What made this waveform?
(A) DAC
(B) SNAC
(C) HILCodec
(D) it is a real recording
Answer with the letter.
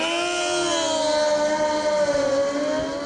D